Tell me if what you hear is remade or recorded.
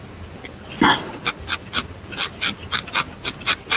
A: recorded